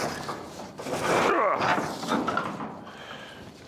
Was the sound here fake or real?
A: real